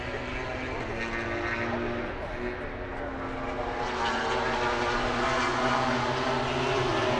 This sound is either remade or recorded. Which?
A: recorded